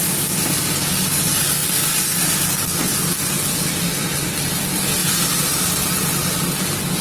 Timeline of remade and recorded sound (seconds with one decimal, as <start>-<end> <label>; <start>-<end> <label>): 0.0-7.0 recorded